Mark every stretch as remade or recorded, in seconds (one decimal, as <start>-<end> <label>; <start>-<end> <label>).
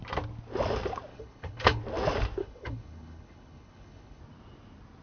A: 0.0-1.1 recorded; 1.1-1.8 remade; 1.8-2.4 recorded; 2.4-4.2 remade; 4.2-5.0 recorded